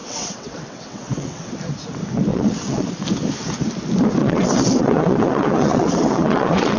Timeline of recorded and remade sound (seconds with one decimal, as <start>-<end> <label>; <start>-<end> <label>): 0.0-1.5 remade; 1.5-2.3 recorded; 2.3-2.9 remade; 2.9-4.2 recorded; 4.2-6.8 remade